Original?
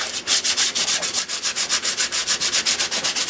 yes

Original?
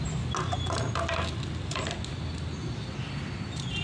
yes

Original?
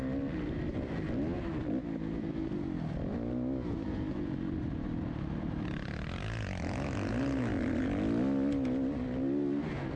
yes